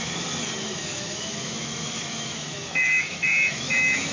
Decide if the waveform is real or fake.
fake